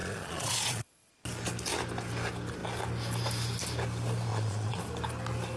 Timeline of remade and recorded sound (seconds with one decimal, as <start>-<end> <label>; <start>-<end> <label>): 0.0-1.1 remade; 1.1-4.3 recorded; 4.3-4.8 remade; 4.8-5.6 recorded

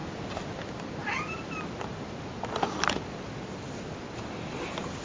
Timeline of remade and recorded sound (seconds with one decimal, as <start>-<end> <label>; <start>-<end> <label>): 0.0-5.0 recorded

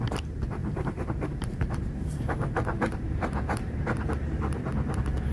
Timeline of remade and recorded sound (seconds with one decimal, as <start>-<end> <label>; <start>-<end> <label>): 0.0-0.6 recorded; 0.6-3.8 remade; 3.8-5.3 recorded

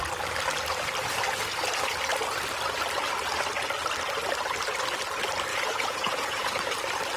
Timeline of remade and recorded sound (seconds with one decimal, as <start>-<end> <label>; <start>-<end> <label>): 0.0-5.5 recorded; 5.5-6.6 remade; 6.6-7.2 recorded